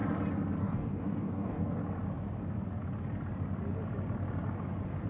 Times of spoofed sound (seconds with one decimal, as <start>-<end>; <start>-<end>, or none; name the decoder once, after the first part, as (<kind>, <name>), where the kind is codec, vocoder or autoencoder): 0.6-1.8 (codec, DAC)